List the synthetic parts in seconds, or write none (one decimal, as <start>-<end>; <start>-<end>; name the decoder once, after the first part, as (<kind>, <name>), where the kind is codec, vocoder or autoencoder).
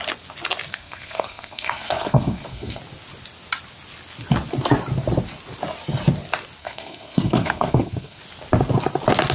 0.7-2.8 (codec, SNAC); 6.6-8.2